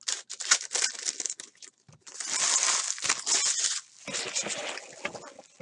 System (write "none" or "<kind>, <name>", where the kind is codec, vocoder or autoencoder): none